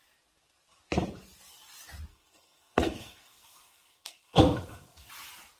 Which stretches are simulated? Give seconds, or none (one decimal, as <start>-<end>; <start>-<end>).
2.1-5.1